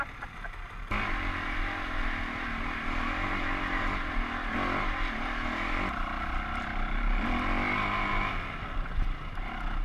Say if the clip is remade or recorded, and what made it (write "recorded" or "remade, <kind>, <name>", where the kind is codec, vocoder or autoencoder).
recorded